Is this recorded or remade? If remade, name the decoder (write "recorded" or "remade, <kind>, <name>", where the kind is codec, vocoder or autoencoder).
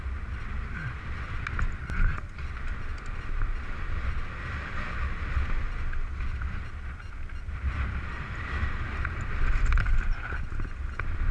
recorded